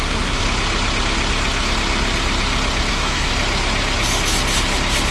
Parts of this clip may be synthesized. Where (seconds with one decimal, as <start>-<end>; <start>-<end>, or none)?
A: 0.0-0.4; 2.9-3.3